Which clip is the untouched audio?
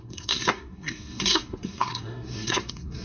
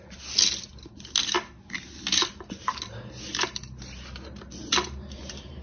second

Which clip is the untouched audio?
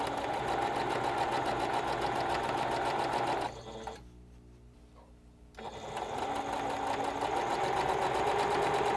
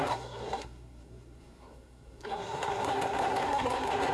first